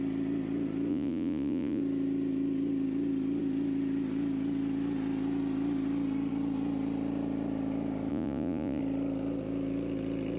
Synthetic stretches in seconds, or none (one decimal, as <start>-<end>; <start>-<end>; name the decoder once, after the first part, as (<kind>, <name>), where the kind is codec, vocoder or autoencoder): 0.9-1.8 (vocoder, Vocos); 8.1-8.8